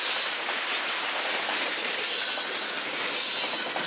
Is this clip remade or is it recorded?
recorded